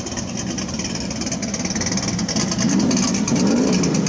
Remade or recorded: recorded